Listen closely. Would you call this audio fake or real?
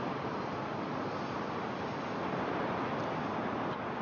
real